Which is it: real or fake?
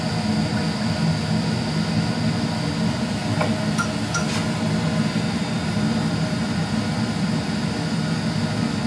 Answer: real